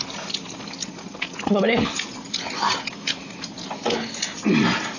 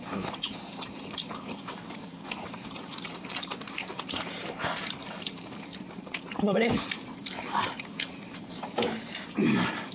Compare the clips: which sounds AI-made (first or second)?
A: second